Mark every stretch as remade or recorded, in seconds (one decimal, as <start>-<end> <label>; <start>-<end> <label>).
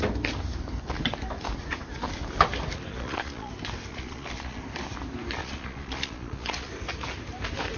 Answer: 0.0-2.9 recorded; 2.9-3.5 remade; 3.5-3.9 recorded; 3.9-4.6 remade; 4.6-5.4 recorded; 5.4-6.7 remade; 6.7-7.8 recorded